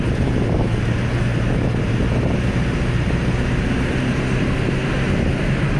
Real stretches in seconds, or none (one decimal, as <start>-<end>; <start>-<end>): 0.0-5.8